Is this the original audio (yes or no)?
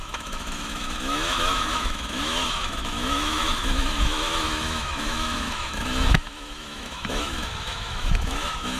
no